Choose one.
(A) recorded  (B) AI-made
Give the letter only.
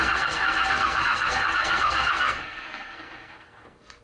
B